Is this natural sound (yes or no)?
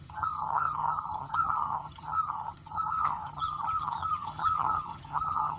no